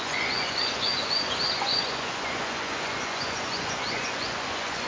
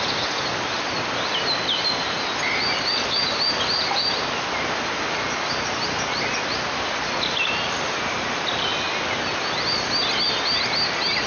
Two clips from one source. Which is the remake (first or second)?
first